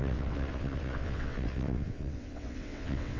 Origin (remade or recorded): remade